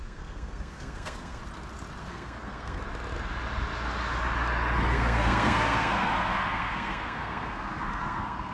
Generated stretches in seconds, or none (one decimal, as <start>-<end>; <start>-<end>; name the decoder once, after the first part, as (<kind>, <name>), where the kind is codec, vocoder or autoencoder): 0.0-1.4 (codec, SNAC); 2.0-2.8; 4.9-8.5